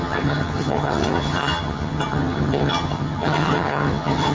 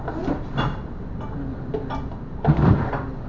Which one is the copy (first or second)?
first